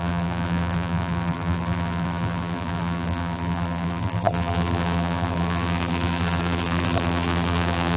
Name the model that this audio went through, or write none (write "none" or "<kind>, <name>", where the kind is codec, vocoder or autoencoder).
vocoder, BigVGAN v2